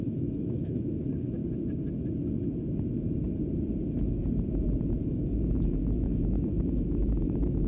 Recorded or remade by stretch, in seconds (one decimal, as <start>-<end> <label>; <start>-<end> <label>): 0.0-1.4 remade; 1.4-5.1 recorded; 5.1-7.7 remade